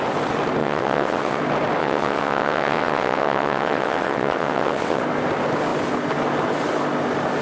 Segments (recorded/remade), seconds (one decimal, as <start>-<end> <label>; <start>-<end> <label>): 0.0-0.6 recorded; 0.6-1.4 remade; 1.4-1.8 recorded; 1.8-5.0 remade; 5.0-7.4 recorded